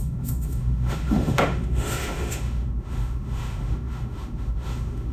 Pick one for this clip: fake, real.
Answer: fake